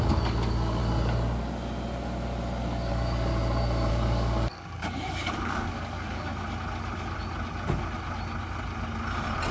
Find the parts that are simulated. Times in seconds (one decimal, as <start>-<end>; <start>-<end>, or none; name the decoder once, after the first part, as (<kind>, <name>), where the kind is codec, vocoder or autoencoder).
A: 0.0-0.8 (codec, DAC); 2.9-3.3; 3.9-6.3